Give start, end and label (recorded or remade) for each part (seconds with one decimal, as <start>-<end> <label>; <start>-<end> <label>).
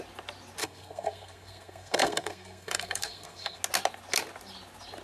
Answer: 0.0-0.6 recorded; 0.6-3.6 remade; 3.6-5.0 recorded